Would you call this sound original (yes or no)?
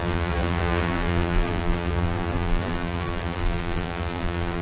no